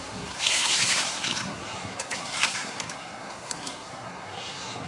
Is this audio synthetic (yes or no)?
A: yes